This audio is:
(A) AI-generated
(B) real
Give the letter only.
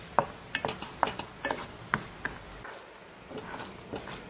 B